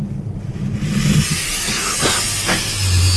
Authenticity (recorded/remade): recorded